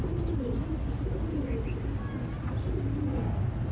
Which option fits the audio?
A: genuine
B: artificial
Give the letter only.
A